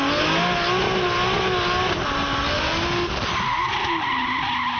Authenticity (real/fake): real